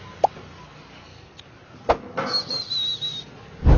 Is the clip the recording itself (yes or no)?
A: yes